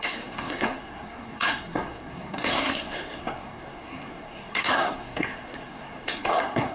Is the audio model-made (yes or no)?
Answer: yes